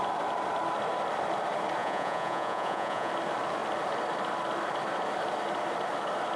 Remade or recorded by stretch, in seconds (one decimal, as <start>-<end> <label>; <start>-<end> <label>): 0.0-1.8 recorded; 1.8-3.1 remade; 3.1-6.4 recorded